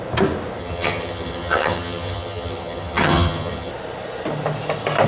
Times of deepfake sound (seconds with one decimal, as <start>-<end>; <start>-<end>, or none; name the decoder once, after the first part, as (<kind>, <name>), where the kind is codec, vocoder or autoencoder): 0.6-3.7 (vocoder, HiFi-GAN)